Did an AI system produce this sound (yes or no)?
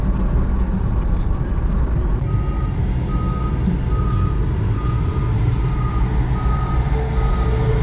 no